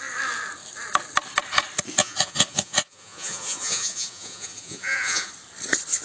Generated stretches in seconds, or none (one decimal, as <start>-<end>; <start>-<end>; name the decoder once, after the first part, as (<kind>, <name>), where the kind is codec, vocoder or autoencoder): 2.0-5.3 (vocoder, Vocos)

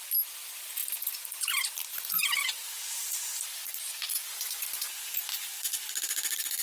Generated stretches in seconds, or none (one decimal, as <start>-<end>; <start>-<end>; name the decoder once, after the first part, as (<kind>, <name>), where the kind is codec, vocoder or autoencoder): 1.9-5.9 (vocoder, BigVGAN v2)